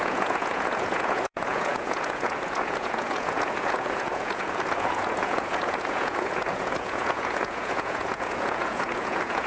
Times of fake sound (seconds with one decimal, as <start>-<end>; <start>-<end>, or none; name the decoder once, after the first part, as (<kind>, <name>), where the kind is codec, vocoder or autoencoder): 0.0-9.5 (vocoder, Vocos)